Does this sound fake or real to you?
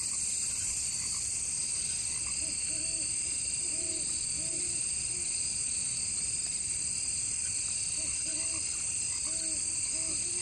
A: real